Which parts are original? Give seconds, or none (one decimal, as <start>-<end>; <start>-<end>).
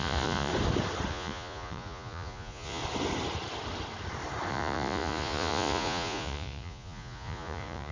0.5-1.1; 2.8-4.5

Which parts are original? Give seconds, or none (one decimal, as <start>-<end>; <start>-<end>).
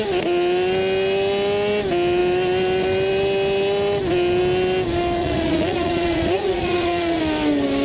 0.0-5.2; 7.2-7.8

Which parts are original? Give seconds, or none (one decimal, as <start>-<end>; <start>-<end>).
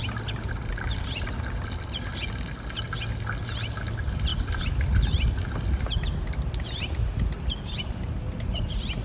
0.0-9.0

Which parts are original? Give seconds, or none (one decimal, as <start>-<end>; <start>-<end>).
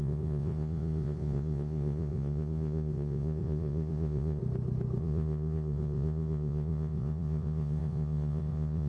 4.4-5.0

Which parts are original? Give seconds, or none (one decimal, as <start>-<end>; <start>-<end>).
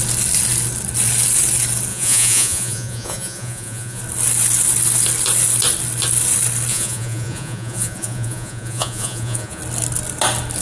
0.0-1.9; 4.0-6.7; 9.6-10.6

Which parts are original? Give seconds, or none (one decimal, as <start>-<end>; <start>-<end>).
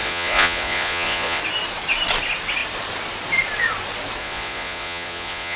1.4-4.2